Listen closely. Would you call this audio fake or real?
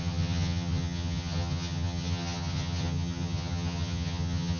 fake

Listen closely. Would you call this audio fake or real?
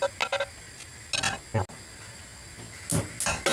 real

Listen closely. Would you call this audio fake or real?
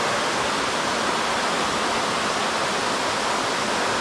real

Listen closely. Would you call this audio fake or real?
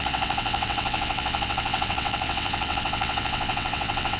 fake